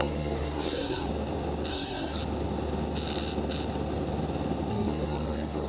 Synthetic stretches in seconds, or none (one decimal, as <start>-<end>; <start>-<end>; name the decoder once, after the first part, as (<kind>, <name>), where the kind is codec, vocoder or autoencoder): 0.0-1.1 (codec, SNAC); 1.7-2.2; 4.7-5.7